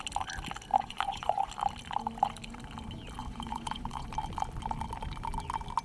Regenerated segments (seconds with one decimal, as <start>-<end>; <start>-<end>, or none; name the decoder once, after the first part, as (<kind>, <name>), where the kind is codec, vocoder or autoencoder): 0.7-1.5 (vocoder, Vocos); 3.2-4.1